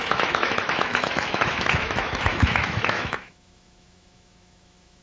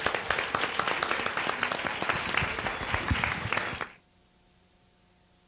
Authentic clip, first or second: second